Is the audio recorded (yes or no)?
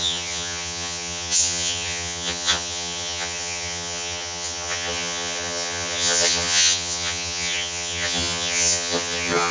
no